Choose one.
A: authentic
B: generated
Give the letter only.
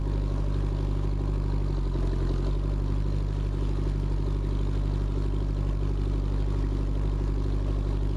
A